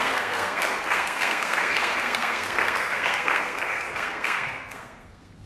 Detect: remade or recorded remade